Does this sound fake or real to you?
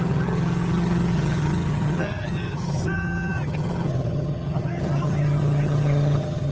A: fake